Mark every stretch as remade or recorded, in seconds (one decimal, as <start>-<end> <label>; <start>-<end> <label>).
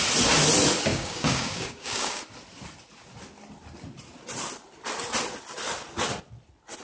0.0-0.9 recorded; 0.9-2.2 remade; 2.2-6.8 recorded